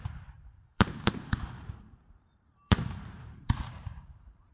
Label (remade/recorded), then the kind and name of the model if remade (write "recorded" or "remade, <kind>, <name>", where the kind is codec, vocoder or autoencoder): remade, vocoder, BigVGAN v2